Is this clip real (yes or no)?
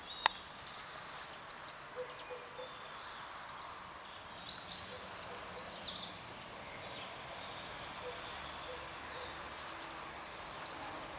yes